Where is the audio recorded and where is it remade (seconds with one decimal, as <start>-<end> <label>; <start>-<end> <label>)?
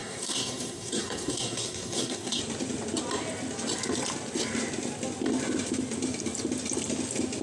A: 0.0-2.4 remade; 2.4-7.4 recorded